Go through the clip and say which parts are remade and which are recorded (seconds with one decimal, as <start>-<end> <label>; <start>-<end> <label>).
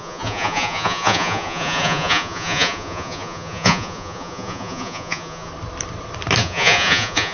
0.0-5.5 remade; 5.5-6.4 recorded; 6.4-7.3 remade